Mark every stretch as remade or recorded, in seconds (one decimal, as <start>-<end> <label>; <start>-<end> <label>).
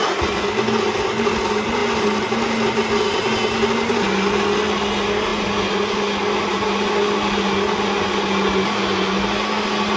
0.0-10.0 recorded